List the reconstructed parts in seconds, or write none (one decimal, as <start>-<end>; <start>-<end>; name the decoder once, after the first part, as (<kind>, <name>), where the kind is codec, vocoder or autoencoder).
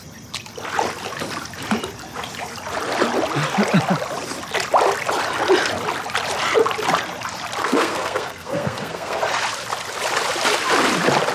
7.6-9.2 (codec, SNAC)